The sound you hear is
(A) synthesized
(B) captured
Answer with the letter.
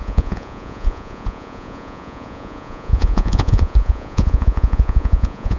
A